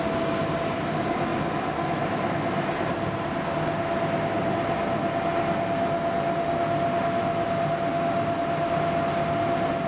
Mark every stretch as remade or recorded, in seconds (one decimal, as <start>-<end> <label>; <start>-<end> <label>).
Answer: 0.0-9.9 recorded